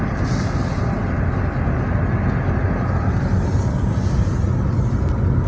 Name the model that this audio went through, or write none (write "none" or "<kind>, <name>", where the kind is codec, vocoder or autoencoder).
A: none